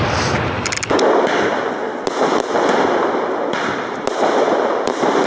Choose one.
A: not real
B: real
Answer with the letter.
B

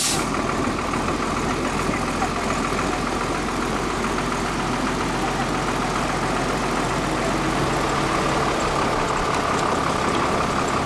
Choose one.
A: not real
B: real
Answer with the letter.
B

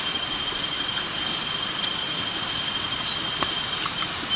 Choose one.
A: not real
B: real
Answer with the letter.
B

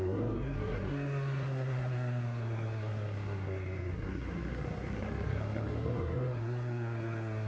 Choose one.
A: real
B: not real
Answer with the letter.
B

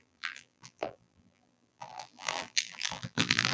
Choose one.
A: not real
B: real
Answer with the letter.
A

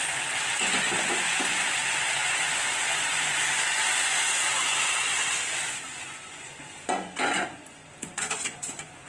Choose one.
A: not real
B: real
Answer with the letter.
A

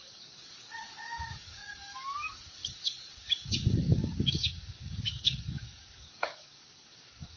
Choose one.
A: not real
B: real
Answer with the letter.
A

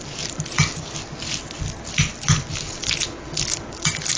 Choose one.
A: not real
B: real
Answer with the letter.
B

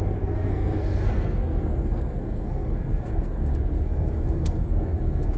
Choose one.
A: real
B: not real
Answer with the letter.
B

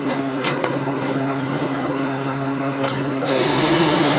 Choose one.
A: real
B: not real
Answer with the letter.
B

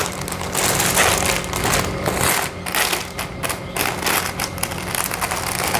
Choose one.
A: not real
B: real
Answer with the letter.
B